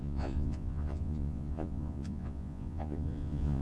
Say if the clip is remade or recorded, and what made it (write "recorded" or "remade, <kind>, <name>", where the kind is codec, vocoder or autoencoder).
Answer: remade, vocoder, Vocos